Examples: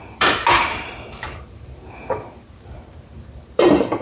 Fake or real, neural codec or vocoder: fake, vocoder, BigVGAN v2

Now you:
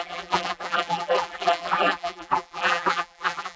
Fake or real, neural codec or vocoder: fake, vocoder, BigVGAN v2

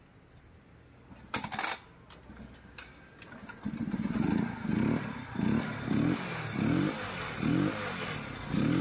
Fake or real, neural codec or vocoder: real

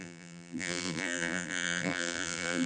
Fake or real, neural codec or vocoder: fake, vocoder, BigVGAN v2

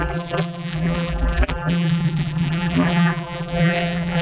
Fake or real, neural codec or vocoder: fake, vocoder, BigVGAN v2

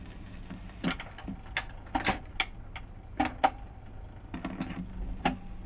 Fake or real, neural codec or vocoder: real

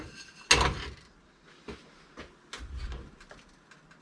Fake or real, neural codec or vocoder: real